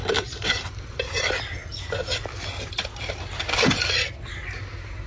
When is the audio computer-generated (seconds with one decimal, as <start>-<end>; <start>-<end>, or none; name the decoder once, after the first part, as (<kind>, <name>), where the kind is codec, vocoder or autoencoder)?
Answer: 0.0-1.6 (vocoder, BigVGAN v2)